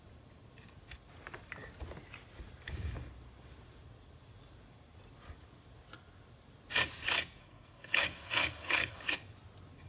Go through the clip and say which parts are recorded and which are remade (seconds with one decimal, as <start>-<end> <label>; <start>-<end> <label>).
0.0-7.4 recorded; 7.4-9.0 remade; 9.0-9.9 recorded